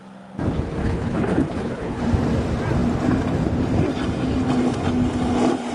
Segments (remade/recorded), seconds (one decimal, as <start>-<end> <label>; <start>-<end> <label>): 0.0-0.8 recorded; 0.8-2.0 remade; 2.0-5.7 recorded